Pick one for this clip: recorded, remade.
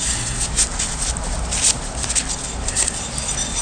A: recorded